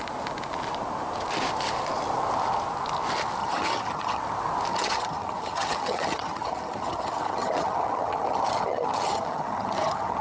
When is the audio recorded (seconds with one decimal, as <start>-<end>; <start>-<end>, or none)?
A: 0.0-3.4; 4.2-4.7